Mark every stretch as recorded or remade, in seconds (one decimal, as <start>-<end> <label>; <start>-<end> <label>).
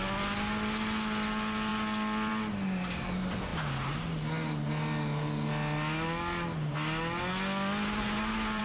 0.0-8.6 recorded